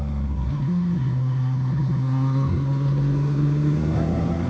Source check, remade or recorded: remade